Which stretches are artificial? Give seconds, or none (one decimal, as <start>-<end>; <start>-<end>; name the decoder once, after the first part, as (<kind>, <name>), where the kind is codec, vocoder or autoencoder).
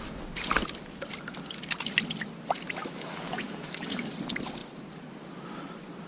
2.8-4.1 (autoencoder, DAC-VAE)